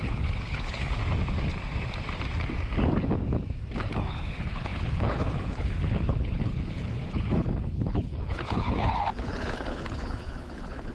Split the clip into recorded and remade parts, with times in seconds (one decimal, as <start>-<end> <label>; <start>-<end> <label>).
0.0-1.0 remade; 1.0-4.1 recorded; 4.1-10.9 remade